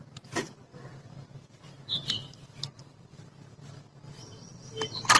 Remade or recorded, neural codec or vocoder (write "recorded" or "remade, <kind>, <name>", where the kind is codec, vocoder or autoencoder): recorded